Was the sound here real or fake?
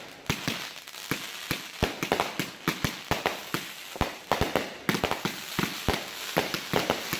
real